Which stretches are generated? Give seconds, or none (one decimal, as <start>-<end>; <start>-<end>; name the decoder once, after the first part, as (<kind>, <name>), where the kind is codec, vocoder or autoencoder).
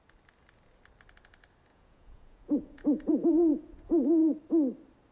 1.7-4.4 (vocoder, Vocos)